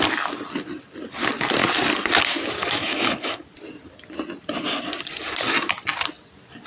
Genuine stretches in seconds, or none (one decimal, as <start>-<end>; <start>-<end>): 0.0-2.6; 3.4-6.7